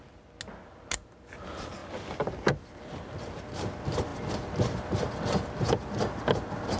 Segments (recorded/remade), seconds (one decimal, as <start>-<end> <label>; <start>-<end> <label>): 0.0-6.8 recorded